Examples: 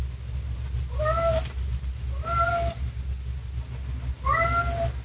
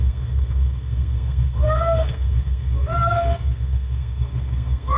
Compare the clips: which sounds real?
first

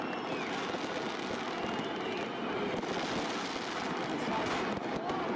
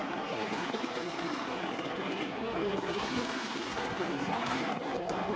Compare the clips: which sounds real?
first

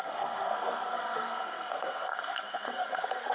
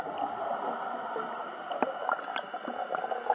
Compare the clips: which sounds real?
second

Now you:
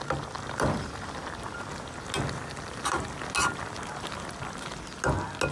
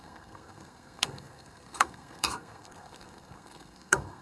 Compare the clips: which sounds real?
first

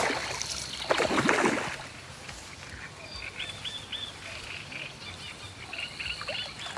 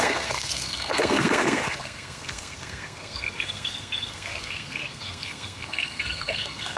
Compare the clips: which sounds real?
first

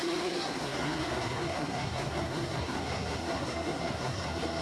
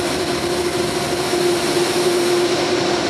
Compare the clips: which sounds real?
second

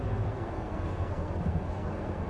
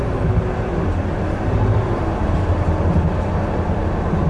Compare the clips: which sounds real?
second